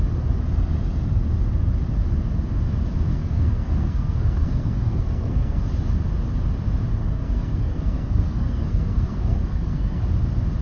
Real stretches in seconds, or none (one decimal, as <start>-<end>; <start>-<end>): 0.0-3.1; 5.6-7.0; 10.0-10.6